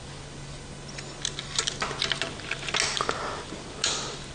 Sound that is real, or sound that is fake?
real